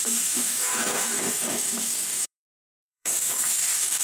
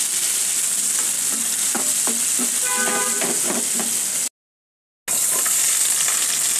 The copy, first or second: first